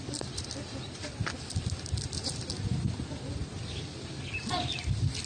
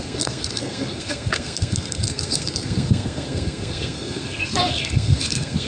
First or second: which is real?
first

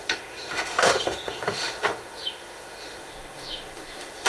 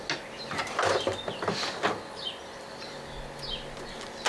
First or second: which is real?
second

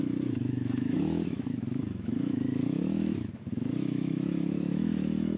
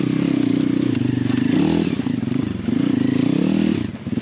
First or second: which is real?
second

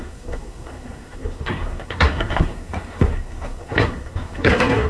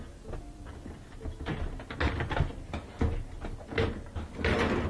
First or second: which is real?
second